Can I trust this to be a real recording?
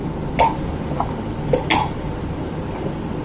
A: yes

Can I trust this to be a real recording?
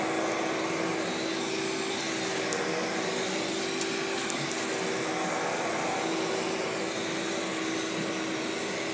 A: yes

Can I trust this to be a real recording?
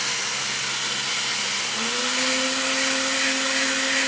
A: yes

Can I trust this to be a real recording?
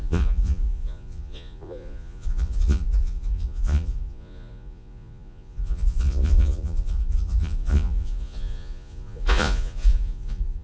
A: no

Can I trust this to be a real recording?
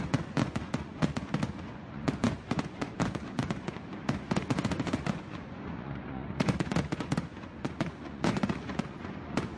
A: no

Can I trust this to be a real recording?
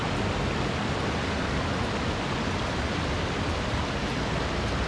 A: yes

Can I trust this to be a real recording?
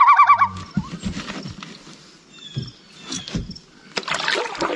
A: yes